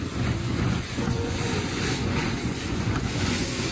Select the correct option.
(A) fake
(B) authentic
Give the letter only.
A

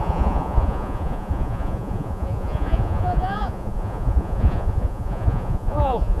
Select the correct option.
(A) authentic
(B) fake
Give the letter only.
B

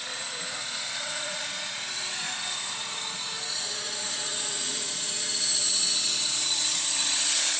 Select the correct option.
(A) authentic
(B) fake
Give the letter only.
B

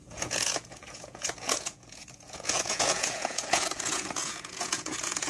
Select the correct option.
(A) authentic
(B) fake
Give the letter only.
B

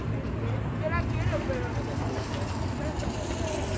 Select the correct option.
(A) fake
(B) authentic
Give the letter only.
B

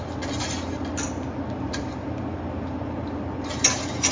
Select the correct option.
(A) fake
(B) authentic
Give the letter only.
B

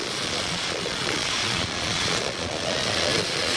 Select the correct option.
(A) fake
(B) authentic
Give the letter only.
A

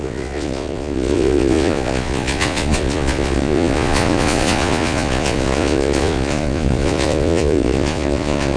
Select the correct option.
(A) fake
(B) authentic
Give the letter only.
A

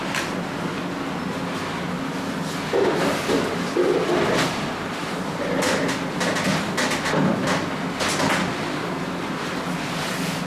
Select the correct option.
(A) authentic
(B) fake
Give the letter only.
A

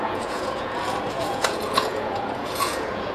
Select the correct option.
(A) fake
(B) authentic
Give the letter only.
A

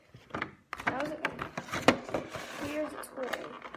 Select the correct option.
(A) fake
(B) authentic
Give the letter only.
B